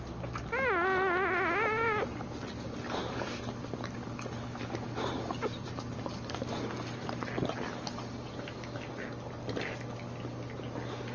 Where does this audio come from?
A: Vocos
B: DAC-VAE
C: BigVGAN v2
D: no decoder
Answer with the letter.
D